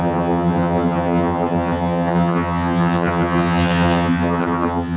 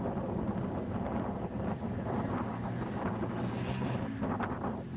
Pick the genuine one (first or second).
second